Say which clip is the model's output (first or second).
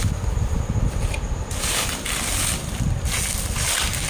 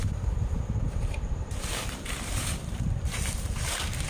second